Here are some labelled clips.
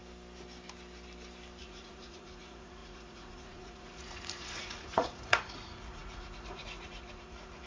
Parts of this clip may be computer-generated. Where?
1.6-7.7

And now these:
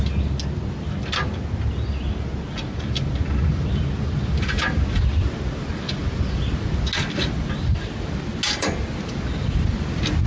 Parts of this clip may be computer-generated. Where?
none